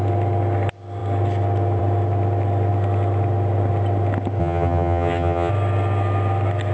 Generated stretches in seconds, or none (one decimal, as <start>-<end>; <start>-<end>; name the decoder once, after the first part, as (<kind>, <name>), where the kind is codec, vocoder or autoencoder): 4.4-5.5 (vocoder, HiFi-GAN)